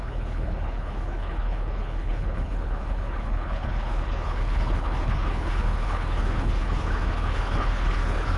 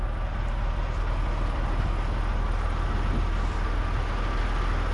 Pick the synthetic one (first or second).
first